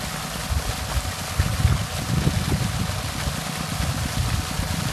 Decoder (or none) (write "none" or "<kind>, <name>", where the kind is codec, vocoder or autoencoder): none